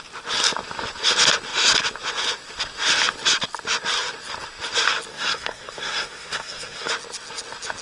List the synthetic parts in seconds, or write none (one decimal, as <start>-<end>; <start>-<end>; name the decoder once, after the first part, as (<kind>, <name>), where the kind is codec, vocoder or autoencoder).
5.1-6.9 (codec, SNAC)